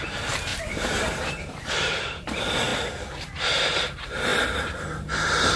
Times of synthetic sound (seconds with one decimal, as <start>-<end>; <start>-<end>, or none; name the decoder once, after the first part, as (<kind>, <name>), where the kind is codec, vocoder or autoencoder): 0.5-1.7 (vocoder, BigVGAN v2)